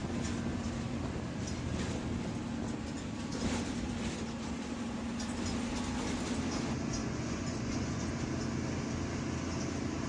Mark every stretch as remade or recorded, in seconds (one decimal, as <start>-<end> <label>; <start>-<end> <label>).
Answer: 0.0-7.0 recorded; 7.0-8.1 remade; 8.1-10.1 recorded